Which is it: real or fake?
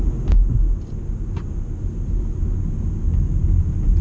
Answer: real